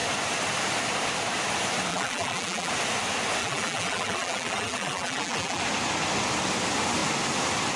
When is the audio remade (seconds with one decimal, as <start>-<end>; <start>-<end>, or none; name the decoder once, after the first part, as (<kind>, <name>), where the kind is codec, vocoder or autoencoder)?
1.9-2.7 (vocoder, BigVGAN v2); 3.4-5.6